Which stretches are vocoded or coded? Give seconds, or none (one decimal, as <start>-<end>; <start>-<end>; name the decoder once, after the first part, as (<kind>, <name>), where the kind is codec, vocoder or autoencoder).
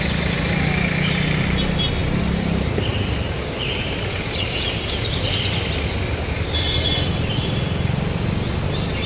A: none